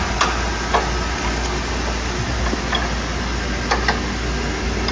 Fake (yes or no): no